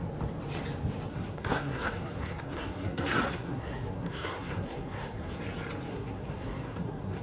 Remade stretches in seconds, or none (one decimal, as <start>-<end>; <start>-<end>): 1.1-5.4; 5.9-7.2